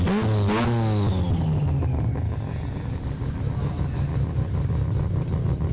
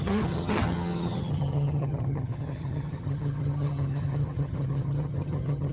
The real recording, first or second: first